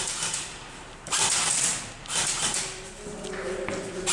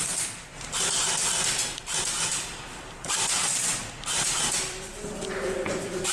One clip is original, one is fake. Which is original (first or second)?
first